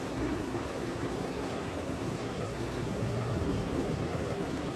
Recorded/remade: remade